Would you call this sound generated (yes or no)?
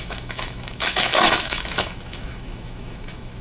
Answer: yes